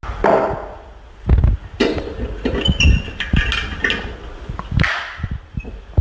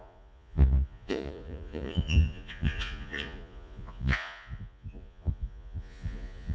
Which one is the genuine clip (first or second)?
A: first